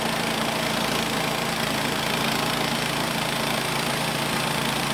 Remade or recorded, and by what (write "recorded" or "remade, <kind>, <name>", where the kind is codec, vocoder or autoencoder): remade, vocoder, BigVGAN v2